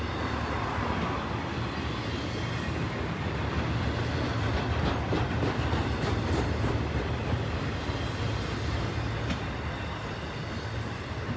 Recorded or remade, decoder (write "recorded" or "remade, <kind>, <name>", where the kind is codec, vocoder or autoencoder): recorded